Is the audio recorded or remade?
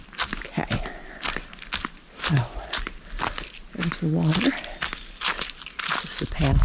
recorded